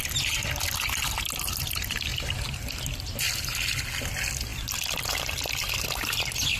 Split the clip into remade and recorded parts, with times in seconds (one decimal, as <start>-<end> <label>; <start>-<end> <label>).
0.0-6.6 recorded